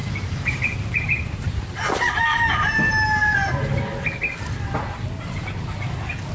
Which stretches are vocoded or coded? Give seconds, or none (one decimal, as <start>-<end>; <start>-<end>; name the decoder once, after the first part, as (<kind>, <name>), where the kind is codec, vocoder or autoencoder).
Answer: 0.0-3.8 (vocoder, BigVGAN v2)